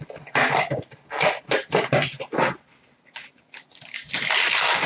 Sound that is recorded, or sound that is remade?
recorded